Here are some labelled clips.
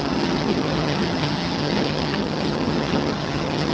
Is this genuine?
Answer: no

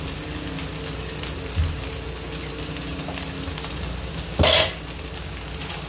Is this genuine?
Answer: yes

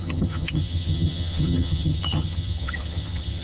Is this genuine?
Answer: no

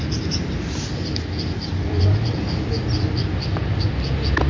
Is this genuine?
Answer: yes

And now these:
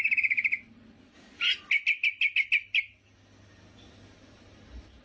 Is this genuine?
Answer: yes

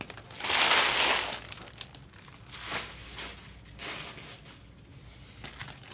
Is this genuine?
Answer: yes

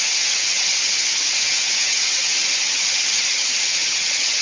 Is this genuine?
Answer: no